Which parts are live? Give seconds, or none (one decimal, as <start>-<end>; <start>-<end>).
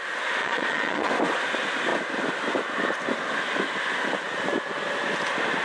0.0-0.4; 1.1-5.6